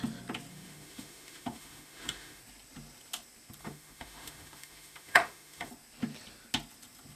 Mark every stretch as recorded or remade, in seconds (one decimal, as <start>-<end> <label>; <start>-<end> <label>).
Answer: 0.0-0.5 recorded; 0.5-2.4 remade; 2.4-3.6 recorded; 3.6-5.7 remade; 5.7-7.2 recorded